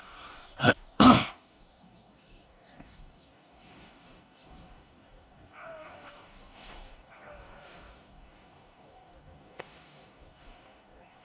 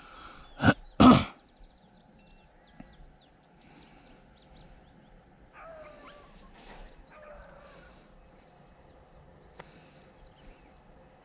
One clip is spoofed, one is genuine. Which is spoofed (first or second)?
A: first